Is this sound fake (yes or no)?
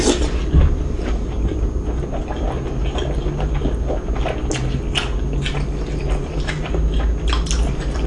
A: no